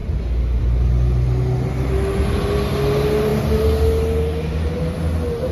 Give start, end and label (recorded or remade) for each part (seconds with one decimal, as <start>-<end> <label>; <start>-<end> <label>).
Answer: 0.0-5.5 recorded